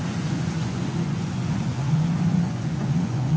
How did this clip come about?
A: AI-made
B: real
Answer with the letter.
A